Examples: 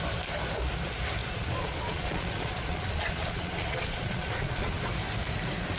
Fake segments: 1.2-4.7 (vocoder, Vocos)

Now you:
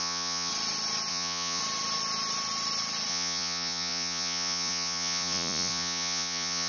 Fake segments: 0.0-0.5 (vocoder, Vocos); 1.1-1.6; 3.1-6.7